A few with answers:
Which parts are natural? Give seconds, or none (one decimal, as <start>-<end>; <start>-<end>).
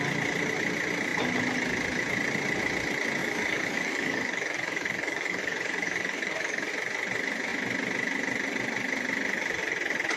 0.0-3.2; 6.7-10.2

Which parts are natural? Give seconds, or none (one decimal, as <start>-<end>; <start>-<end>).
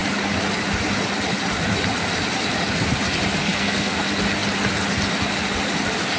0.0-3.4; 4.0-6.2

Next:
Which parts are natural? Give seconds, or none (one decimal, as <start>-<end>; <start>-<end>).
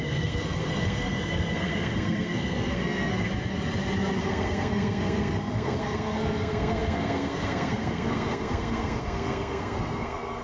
3.3-4.2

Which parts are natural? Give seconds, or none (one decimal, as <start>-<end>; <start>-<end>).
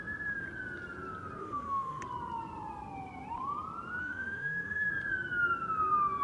0.0-1.4; 2.0-4.0; 4.9-6.2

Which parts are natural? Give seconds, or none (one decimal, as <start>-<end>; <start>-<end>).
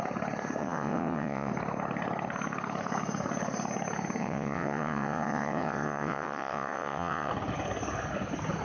0.0-0.6; 1.5-4.2; 7.3-8.6